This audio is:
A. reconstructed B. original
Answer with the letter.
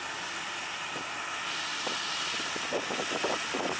B